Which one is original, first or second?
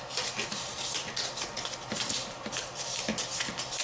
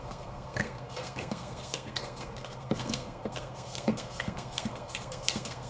first